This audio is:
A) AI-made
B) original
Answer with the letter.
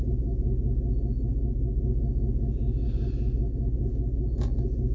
B